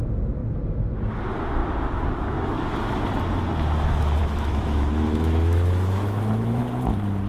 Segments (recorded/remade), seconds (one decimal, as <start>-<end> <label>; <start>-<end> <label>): 0.0-4.2 recorded; 4.2-6.6 remade; 6.6-7.3 recorded

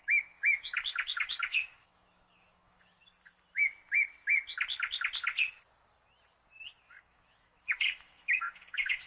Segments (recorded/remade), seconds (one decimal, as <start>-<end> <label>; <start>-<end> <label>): 0.0-3.0 remade; 3.0-7.0 recorded; 7.0-9.1 remade

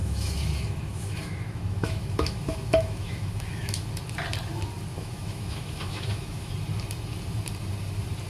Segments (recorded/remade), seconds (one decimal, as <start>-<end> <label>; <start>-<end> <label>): 0.0-3.9 remade; 3.9-4.9 recorded; 4.9-6.5 remade; 6.5-8.3 recorded

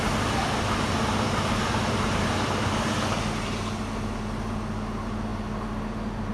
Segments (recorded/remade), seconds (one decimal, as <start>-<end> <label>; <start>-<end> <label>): 0.0-6.3 recorded

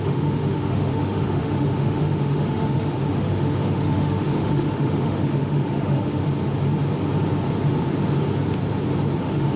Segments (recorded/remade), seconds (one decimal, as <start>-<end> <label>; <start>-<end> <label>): 0.0-6.2 remade; 6.2-9.2 recorded; 9.2-9.6 remade